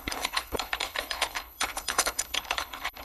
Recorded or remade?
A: remade